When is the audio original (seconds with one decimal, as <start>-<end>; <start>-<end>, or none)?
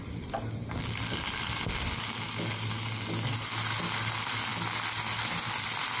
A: 0.0-6.0